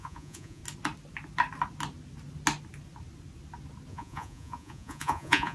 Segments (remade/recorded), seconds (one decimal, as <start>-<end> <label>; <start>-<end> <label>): 0.0-0.6 remade; 0.6-3.9 recorded; 3.9-5.5 remade